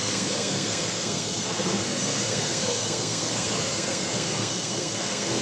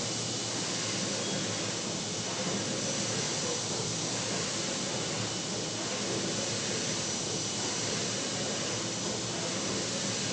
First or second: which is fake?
first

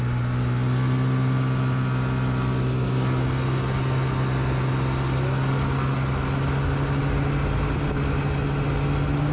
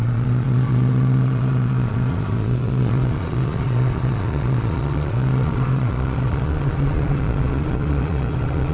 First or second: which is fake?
second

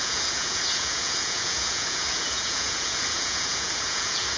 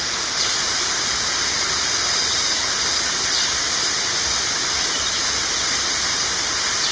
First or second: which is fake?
first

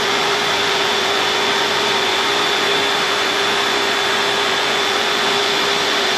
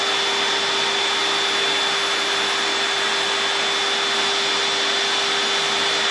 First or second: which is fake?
first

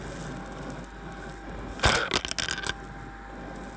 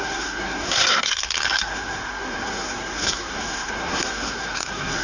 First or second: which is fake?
second